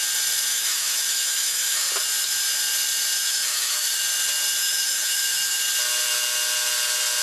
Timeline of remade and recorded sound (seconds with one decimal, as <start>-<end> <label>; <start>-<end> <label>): 0.0-0.5 recorded; 0.5-1.9 remade; 1.9-3.2 recorded; 3.2-4.0 remade; 4.0-4.6 recorded; 4.6-5.6 remade; 5.6-7.2 recorded